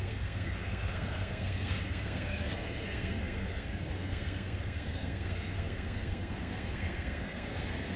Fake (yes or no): yes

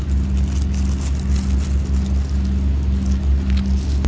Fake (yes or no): no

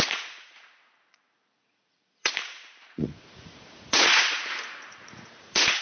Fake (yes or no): yes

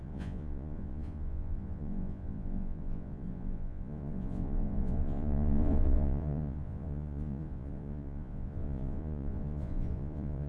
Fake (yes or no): yes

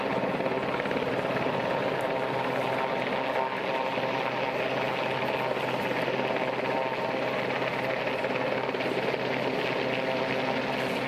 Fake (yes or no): no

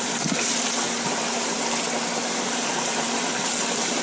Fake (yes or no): no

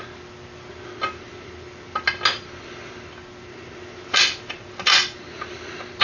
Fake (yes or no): no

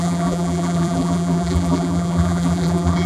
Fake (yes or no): yes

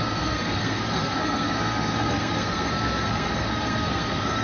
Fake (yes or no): yes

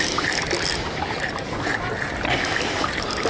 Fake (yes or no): no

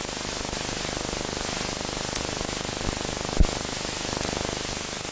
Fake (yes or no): no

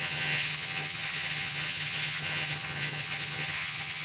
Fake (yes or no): yes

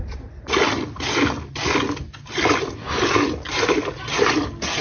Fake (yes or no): no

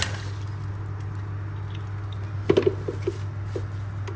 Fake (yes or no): no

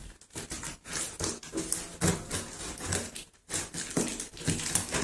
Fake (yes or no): no